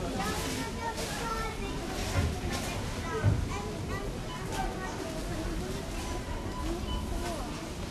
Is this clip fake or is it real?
real